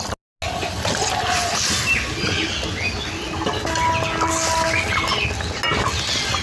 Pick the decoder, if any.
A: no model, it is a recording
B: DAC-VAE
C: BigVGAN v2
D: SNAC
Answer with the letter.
A